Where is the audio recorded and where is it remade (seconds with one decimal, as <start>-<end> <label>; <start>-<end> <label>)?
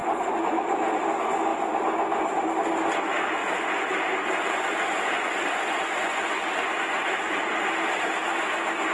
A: 0.0-0.8 remade; 0.8-3.4 recorded; 3.4-7.7 remade; 7.7-8.9 recorded